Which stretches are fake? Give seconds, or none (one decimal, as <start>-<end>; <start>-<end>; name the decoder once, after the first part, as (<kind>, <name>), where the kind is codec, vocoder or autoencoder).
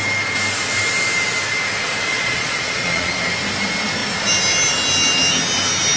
2.1-3.2 (vocoder, Vocos)